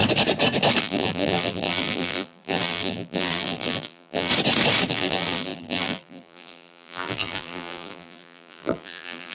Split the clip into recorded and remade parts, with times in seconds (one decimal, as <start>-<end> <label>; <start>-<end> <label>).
0.0-0.8 recorded; 0.8-4.3 remade; 4.3-4.9 recorded; 4.9-9.3 remade